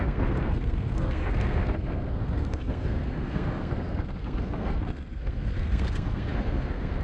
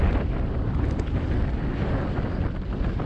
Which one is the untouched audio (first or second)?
second